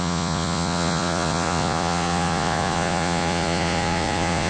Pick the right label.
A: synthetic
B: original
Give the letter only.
A